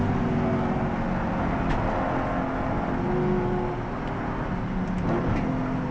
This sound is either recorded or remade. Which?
recorded